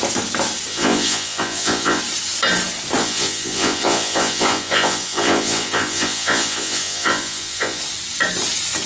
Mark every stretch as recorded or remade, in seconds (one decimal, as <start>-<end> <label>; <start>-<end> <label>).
0.0-0.7 recorded; 0.7-2.0 remade; 2.0-3.0 recorded; 3.0-7.8 remade; 7.8-8.9 recorded